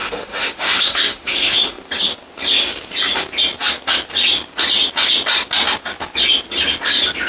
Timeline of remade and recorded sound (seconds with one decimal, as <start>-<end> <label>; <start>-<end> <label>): 0.0-1.8 remade; 1.8-7.3 recorded